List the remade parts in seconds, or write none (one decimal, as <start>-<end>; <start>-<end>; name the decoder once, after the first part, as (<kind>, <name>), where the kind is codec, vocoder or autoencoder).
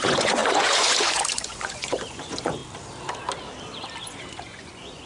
0.0-2.6 (vocoder, Vocos); 4.1-5.1